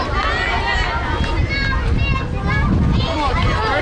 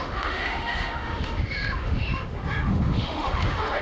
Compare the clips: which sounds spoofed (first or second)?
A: second